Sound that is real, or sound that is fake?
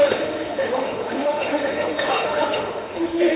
fake